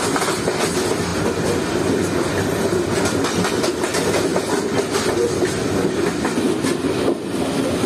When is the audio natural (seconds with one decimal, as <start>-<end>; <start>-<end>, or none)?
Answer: 0.0-7.9